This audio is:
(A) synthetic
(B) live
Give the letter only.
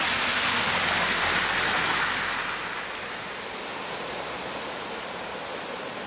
B